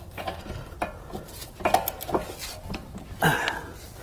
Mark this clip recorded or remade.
recorded